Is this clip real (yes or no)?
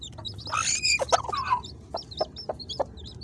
yes